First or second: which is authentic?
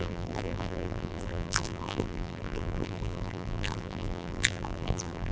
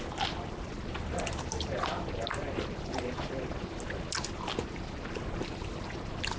second